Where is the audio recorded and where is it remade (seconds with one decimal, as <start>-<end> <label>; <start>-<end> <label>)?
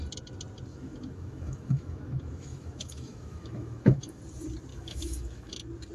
0.0-0.7 recorded; 0.7-4.2 remade; 4.2-4.7 recorded; 4.7-5.5 remade; 5.5-5.9 recorded